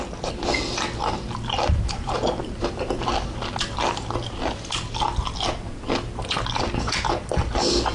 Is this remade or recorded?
recorded